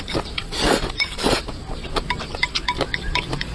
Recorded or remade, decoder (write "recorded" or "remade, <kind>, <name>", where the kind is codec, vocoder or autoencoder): remade, vocoder, BigVGAN v2